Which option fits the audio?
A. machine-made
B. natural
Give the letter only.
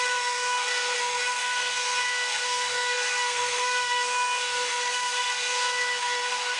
A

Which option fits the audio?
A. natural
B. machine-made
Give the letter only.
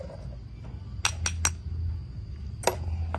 A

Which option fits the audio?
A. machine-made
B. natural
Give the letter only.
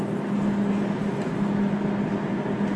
B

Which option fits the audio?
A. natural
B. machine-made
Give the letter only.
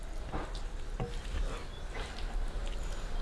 A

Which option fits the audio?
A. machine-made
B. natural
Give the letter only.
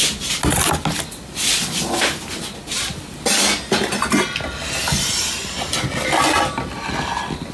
B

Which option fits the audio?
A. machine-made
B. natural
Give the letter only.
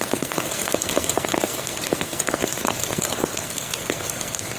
A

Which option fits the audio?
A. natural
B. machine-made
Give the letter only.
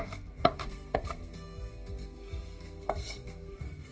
B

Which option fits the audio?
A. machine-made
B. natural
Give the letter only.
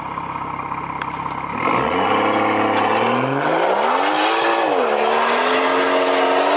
B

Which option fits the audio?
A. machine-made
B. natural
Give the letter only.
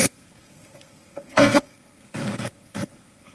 A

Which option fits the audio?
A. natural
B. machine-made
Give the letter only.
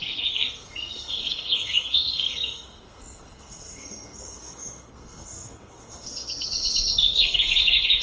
B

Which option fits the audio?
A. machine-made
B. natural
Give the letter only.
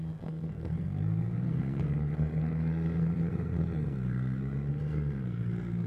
A